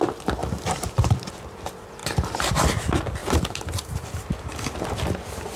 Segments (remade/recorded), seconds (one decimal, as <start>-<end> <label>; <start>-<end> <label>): 0.0-0.4 recorded; 0.4-1.3 remade; 1.3-2.0 recorded; 2.0-2.8 remade; 2.8-3.2 recorded; 3.2-5.0 remade; 5.0-5.6 recorded